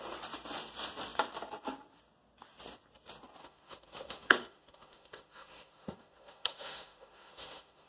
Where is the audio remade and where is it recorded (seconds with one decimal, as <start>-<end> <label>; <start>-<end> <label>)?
0.0-3.4 recorded; 3.4-7.9 remade

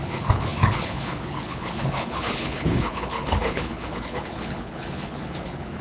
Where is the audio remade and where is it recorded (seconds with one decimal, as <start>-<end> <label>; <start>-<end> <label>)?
0.0-5.8 remade